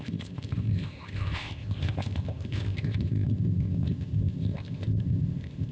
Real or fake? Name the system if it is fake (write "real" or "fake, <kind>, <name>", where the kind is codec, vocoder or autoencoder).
fake, codec, ZipCodec